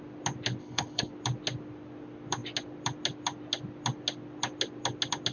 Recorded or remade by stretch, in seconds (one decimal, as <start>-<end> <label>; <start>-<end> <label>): 0.0-0.6 recorded; 0.6-1.1 remade; 1.1-5.3 recorded